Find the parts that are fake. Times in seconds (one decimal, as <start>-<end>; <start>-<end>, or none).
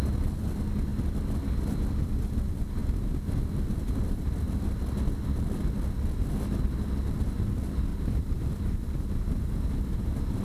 7.9-10.4